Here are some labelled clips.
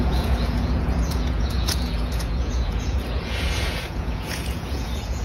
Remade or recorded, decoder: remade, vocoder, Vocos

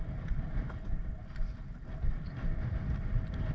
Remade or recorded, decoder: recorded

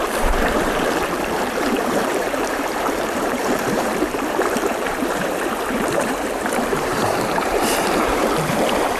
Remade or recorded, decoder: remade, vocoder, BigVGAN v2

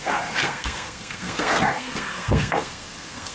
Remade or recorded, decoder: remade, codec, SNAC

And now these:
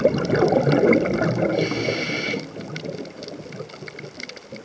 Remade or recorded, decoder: recorded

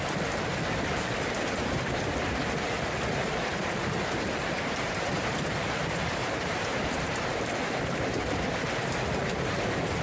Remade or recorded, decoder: remade, vocoder, BigVGAN v2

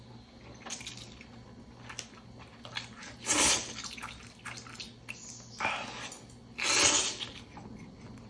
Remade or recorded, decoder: recorded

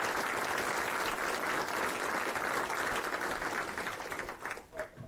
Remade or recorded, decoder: recorded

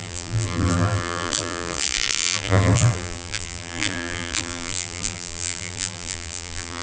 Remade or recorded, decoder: remade, vocoder, BigVGAN v2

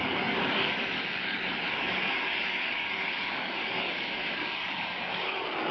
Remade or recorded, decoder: remade, codec, DAC